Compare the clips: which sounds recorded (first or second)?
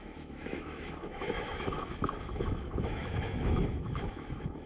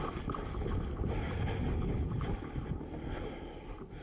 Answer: second